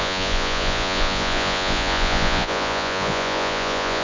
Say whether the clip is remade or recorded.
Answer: remade